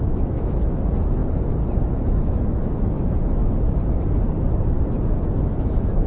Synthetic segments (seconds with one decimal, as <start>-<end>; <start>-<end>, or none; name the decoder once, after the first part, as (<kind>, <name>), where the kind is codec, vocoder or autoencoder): 0.0-1.2 (autoencoder, DAC-VAE); 2.0-3.4; 5.1-6.1